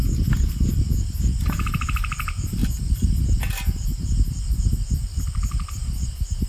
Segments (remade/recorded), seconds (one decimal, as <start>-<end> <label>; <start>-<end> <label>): 0.0-2.6 recorded; 2.6-3.2 remade; 3.2-5.1 recorded; 5.1-6.5 remade